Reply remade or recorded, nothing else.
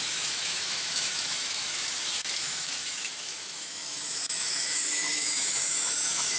remade